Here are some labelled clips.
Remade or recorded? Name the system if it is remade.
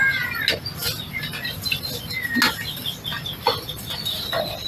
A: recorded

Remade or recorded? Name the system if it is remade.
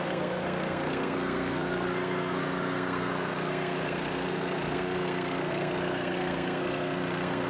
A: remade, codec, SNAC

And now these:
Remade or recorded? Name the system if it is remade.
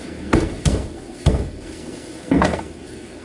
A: remade, codec, SNAC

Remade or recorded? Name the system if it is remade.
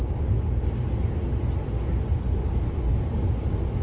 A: recorded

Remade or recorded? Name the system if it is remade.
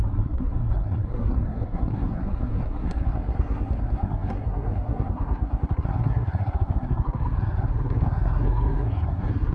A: remade, codec, SNAC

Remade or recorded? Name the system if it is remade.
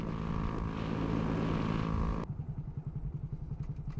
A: recorded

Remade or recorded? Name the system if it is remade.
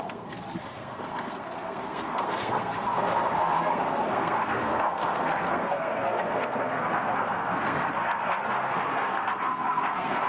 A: remade, codec, SNAC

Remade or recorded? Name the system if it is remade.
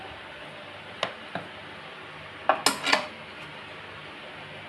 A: recorded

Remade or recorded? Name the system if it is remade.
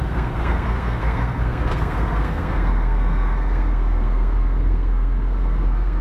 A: remade, codec, SNAC